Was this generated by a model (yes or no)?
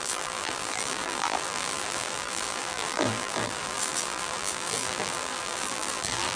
yes